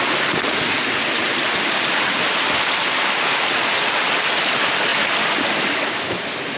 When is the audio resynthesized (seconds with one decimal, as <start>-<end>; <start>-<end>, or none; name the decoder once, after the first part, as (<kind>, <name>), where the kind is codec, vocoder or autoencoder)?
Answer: none